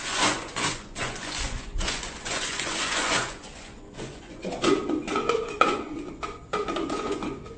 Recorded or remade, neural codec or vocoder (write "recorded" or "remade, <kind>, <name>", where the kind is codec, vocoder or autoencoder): remade, vocoder, Vocos